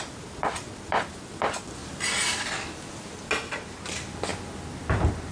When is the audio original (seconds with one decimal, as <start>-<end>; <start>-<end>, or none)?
0.0-5.3